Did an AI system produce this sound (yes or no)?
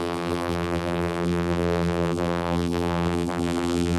yes